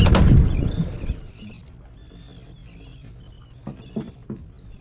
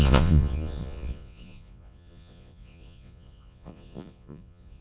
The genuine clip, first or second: first